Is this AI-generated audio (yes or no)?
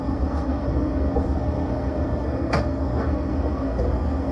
yes